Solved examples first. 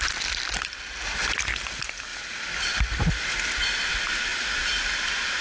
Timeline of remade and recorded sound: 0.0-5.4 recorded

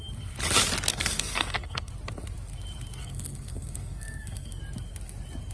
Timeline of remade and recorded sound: 0.0-0.9 recorded; 0.9-1.9 remade; 1.9-3.0 recorded; 3.0-4.6 remade; 4.6-5.5 recorded

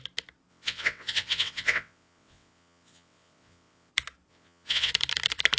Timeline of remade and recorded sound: 0.0-0.5 recorded; 0.5-3.9 remade; 3.9-4.3 recorded; 4.3-4.9 remade; 4.9-5.6 recorded

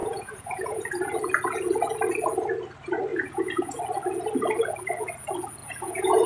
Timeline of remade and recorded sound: 0.0-0.8 remade; 0.8-3.1 recorded; 3.1-3.8 remade; 3.8-5.6 recorded; 5.6-6.3 remade

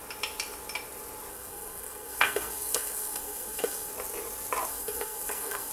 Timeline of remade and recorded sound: 0.0-1.3 recorded; 1.3-3.9 remade; 3.9-4.7 recorded; 4.7-5.7 remade

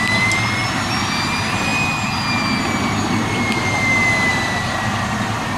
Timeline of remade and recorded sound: 0.0-5.6 recorded